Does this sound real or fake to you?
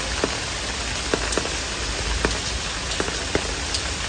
real